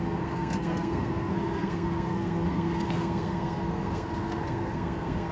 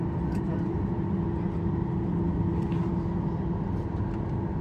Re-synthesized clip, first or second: first